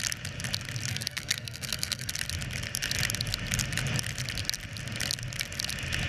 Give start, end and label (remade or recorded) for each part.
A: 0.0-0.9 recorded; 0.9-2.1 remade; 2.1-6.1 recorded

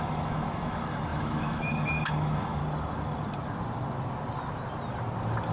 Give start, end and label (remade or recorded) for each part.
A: 0.0-2.6 remade; 2.6-5.5 recorded

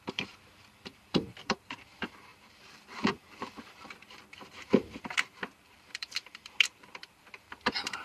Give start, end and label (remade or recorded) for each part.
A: 0.0-8.0 remade

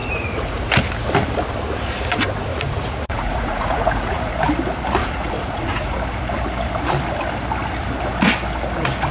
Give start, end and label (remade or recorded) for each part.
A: 0.0-0.7 remade; 0.7-2.5 recorded; 2.5-4.3 remade; 4.3-5.0 recorded; 5.0-5.9 remade; 5.9-9.1 recorded